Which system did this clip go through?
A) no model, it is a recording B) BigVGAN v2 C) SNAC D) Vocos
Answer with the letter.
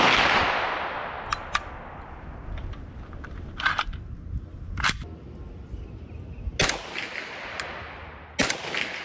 A